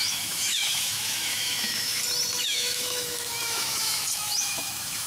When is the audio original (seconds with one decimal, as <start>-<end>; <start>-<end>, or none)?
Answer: 2.0-2.4